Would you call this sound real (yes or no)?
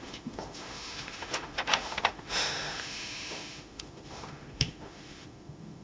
no